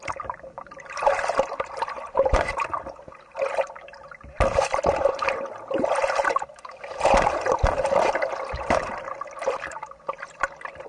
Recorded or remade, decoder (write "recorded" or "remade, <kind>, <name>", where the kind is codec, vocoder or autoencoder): remade, vocoder, BigVGAN v2